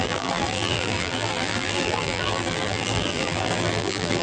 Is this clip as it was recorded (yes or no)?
no